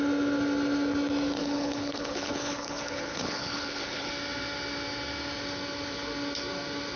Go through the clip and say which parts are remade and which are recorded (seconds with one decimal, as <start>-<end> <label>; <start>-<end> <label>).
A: 0.0-1.4 recorded; 1.4-4.1 remade; 4.1-7.0 recorded